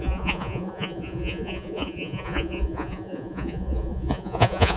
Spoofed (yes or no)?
yes